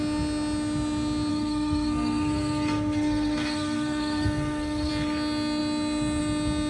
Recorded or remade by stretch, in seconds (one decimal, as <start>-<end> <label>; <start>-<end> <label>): 0.0-1.3 recorded; 1.3-4.9 remade; 4.9-6.7 recorded